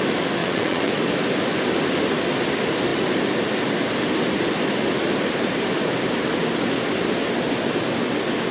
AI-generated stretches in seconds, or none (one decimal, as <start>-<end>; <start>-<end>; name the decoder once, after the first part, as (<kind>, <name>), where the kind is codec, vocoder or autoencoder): 0.4-0.9 (vocoder, Vocos)